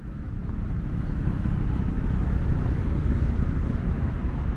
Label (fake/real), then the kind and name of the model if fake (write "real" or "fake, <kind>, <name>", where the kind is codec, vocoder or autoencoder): fake, autoencoder, DAC-VAE